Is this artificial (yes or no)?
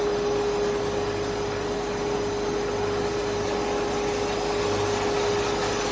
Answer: no